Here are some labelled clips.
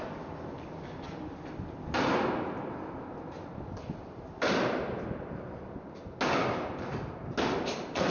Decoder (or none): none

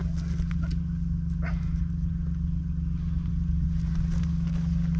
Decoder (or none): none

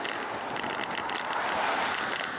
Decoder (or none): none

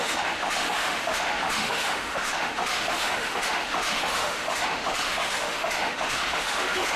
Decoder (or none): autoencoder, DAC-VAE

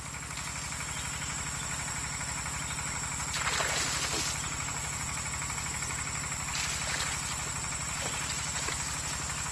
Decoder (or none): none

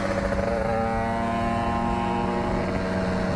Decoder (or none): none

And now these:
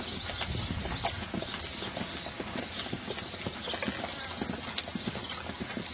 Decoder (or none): none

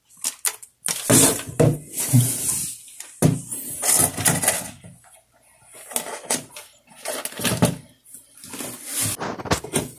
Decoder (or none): none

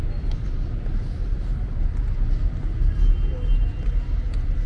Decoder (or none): none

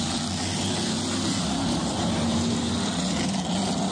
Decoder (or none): none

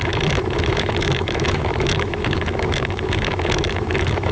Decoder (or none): autoencoder, DAC-VAE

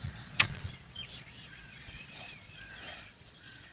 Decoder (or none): vocoder, Vocos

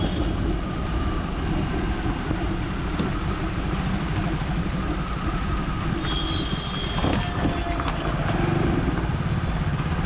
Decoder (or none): none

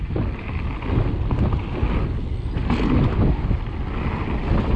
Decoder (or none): none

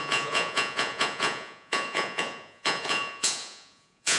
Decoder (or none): vocoder, Vocos